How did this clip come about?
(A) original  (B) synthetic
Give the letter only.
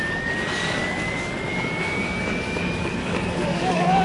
B